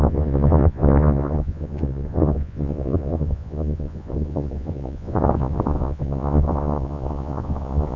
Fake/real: fake